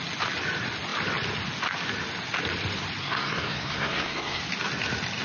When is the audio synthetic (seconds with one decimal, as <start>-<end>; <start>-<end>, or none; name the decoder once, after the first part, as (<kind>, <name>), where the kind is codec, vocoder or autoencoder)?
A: 3.0-4.4 (codec, SNAC)